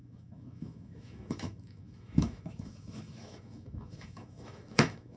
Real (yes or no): no